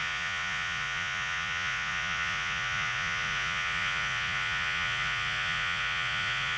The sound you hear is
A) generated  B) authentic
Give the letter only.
A